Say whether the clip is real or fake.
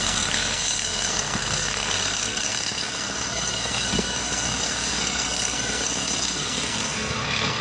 fake